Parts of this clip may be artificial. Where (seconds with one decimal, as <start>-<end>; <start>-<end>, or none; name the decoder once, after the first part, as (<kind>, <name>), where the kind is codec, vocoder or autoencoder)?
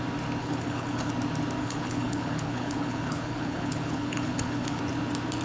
0.4-1.1 (codec, HILCodec); 1.6-4.8